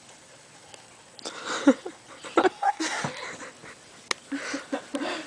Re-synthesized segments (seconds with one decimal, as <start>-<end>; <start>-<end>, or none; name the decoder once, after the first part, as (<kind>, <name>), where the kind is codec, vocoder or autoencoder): 2.4-3.0 (codec, SNAC)